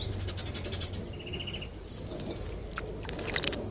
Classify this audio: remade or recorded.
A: recorded